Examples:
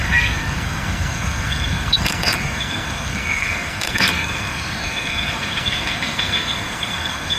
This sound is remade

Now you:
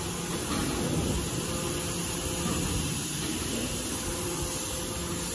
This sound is recorded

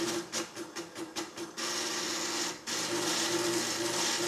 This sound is recorded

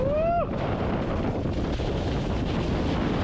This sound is recorded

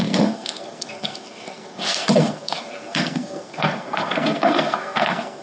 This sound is remade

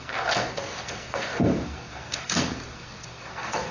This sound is remade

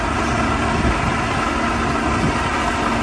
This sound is recorded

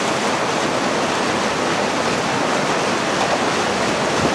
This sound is recorded